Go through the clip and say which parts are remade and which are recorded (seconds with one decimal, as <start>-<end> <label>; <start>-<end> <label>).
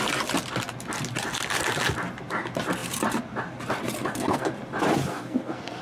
0.0-4.0 recorded; 4.0-4.5 remade; 4.5-5.1 recorded; 5.1-5.8 remade